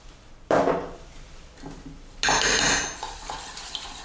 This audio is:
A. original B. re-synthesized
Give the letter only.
A